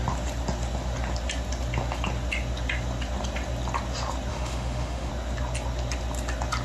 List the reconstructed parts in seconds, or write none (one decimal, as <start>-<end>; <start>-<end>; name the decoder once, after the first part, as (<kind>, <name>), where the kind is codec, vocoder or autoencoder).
4.3-5.1 (autoencoder, DAC-VAE)